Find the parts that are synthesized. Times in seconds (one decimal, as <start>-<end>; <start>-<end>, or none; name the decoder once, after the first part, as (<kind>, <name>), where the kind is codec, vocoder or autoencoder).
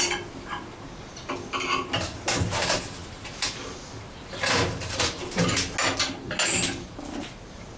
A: none